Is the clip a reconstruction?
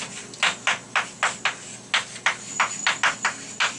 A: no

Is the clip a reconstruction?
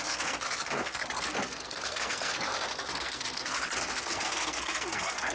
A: yes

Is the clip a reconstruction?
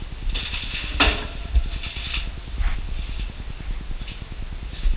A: no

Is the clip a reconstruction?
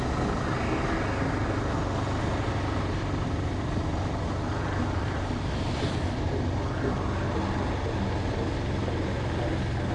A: no